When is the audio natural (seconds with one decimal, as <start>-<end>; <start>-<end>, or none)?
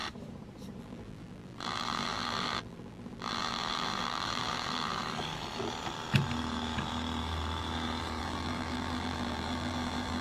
0.0-0.8; 5.0-8.2